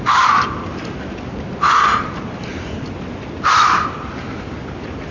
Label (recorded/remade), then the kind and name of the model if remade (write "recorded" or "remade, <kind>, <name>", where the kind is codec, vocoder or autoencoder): recorded